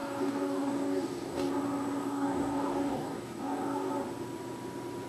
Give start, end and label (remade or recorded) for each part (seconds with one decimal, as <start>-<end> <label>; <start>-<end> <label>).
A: 0.0-1.5 remade; 1.5-2.0 recorded; 2.0-3.9 remade; 3.9-5.1 recorded